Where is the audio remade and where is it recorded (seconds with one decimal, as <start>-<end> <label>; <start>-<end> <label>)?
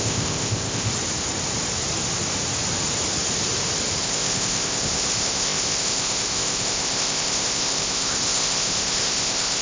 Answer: 0.0-0.9 remade; 0.9-4.0 recorded; 4.0-9.6 remade